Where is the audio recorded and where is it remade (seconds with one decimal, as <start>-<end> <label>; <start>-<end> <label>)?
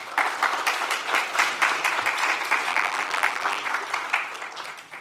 0.0-2.7 recorded; 2.7-3.6 remade; 3.6-5.0 recorded